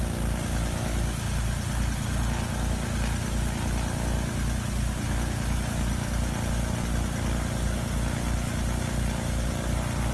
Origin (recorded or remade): recorded